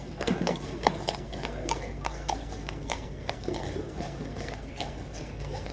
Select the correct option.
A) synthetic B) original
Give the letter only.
A